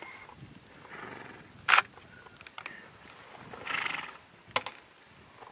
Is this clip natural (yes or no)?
yes